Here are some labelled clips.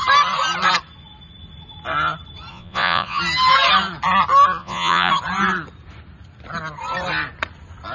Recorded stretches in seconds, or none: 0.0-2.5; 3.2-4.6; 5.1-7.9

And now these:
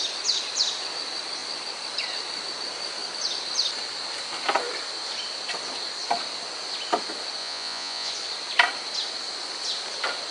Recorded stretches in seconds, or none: 0.0-7.4; 8.1-10.3

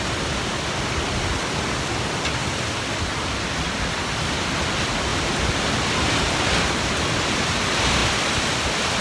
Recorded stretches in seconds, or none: 0.0-9.0

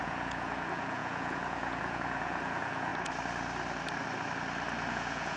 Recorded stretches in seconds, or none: 2.9-4.9

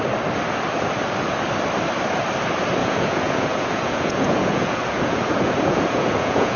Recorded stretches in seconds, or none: 0.0-2.8

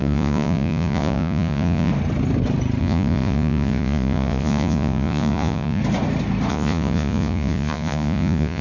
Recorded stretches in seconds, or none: 1.9-2.8; 5.8-6.5